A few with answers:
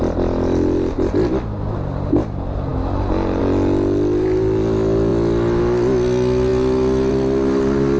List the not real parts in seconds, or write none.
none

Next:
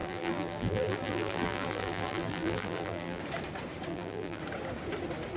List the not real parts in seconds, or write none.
0.0-3.2 (vocoder, BigVGAN v2); 3.9-4.4

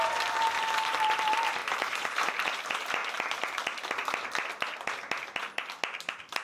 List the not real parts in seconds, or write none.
1.6-2.3 (vocoder, BigVGAN v2)

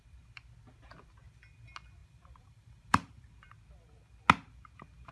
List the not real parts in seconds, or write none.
2.0-3.3 (vocoder, BigVGAN v2)

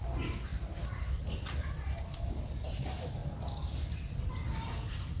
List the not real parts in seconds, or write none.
0.5-2.3 (vocoder, BigVGAN v2)